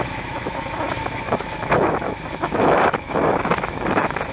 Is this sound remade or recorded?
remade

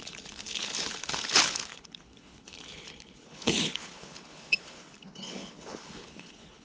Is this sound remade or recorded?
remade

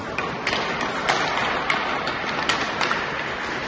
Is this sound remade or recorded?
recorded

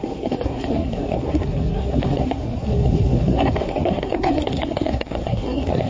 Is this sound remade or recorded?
remade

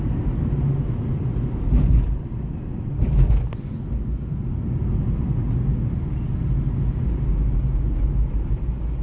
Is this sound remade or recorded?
recorded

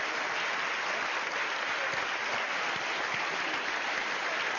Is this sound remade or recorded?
recorded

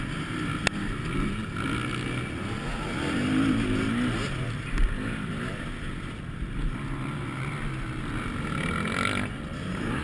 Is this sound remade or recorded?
recorded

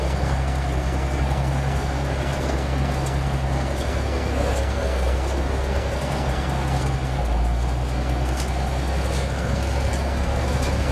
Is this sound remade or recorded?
remade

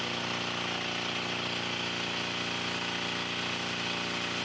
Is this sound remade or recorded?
recorded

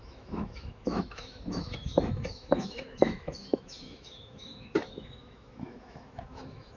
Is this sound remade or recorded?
remade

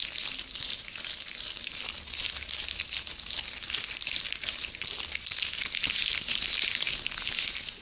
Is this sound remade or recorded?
recorded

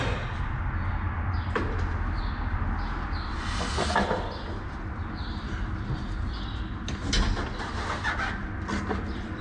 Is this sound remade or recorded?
recorded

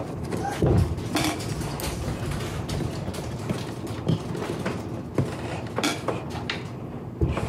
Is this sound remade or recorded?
recorded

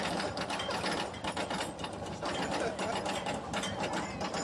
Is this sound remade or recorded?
recorded